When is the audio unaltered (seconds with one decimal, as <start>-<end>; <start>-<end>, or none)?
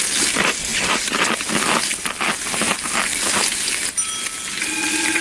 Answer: 0.0-5.2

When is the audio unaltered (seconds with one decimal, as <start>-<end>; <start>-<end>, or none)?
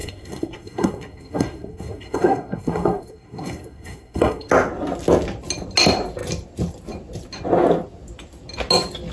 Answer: 4.5-9.1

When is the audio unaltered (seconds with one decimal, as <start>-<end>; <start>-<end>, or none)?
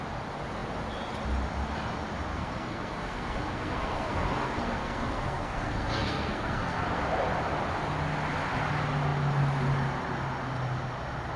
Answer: 0.0-2.3; 7.0-11.4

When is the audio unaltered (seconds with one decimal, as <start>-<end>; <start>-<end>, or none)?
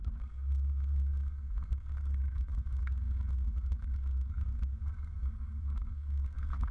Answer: none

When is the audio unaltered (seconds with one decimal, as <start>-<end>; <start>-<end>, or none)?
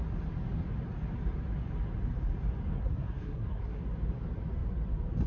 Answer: 0.0-2.7; 3.8-5.3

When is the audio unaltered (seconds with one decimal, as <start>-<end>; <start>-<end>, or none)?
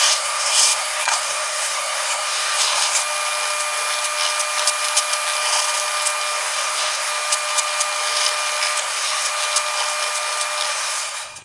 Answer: 3.0-6.4; 7.1-8.8; 9.3-10.7